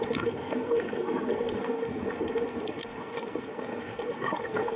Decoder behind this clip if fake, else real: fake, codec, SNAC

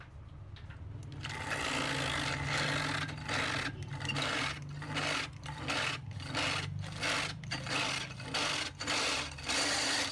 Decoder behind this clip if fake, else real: real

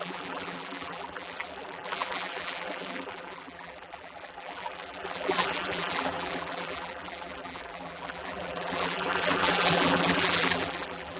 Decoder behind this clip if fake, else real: fake, vocoder, BigVGAN v2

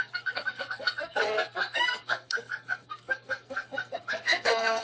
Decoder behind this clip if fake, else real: fake, codec, SNAC